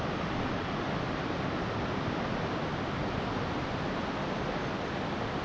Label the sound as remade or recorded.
recorded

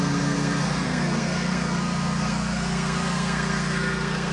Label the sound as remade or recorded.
remade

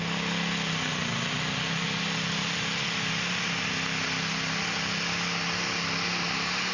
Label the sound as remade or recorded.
recorded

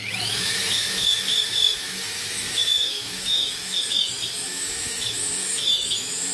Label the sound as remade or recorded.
remade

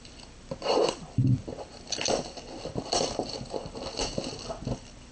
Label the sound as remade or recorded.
remade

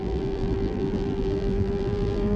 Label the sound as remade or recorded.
remade